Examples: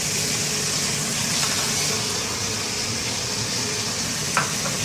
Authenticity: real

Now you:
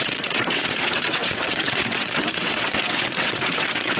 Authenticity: fake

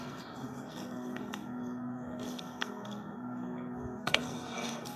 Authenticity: fake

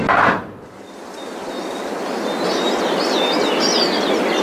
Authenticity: real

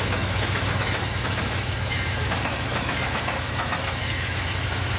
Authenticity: fake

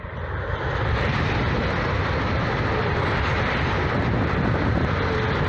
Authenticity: real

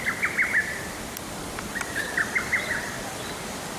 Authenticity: fake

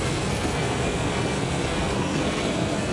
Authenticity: fake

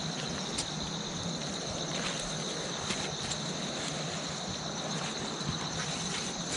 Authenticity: real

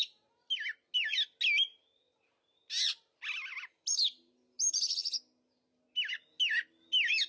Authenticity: real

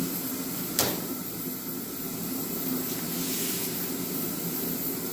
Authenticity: fake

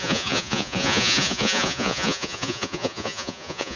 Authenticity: fake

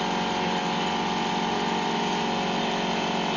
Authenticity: real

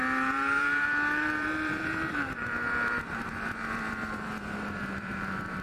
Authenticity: fake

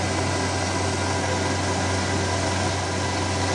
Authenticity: real